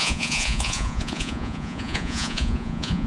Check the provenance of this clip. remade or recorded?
remade